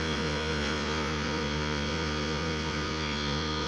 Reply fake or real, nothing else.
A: fake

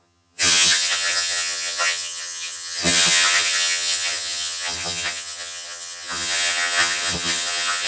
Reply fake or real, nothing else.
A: fake